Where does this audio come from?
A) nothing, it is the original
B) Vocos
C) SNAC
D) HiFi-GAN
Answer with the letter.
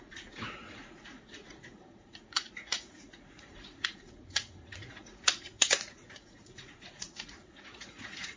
B